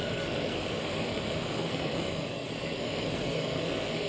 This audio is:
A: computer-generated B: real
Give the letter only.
A